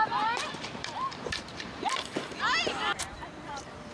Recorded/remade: remade